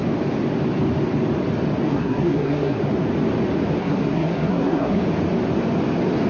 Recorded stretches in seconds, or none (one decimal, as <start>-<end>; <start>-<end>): 0.0-1.9; 2.8-3.8; 5.0-6.3